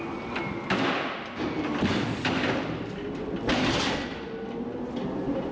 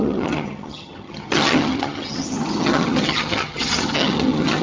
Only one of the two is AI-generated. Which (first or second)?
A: second